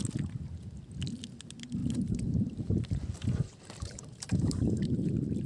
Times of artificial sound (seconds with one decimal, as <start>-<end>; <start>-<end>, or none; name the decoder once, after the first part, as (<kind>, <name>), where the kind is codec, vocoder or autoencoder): 1.8-5.1 (vocoder, BigVGAN v2)